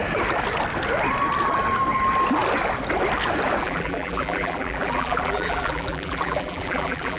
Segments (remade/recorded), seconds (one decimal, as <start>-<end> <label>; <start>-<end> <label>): 0.0-3.6 recorded; 3.6-7.2 remade